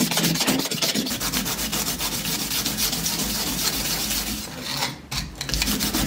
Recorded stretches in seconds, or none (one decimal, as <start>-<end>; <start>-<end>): 0.0-6.1